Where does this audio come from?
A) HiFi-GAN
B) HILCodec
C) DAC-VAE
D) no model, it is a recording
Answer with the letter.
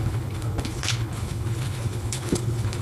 B